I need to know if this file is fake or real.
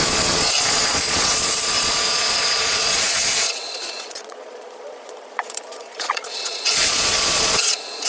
fake